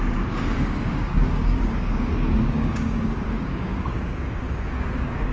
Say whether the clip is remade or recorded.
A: remade